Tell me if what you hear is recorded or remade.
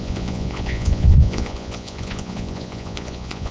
remade